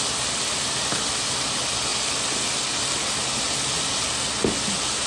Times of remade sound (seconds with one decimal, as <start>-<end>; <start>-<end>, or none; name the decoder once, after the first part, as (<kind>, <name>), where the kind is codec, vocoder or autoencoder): none